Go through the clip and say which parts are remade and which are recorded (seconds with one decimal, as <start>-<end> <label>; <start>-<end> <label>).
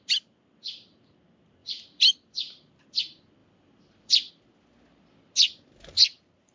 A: 0.0-1.6 recorded; 1.6-2.3 remade; 2.3-3.4 recorded; 3.4-4.3 remade; 4.3-6.5 recorded